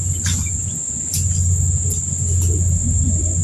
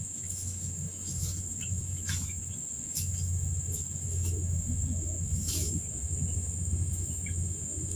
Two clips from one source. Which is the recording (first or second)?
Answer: first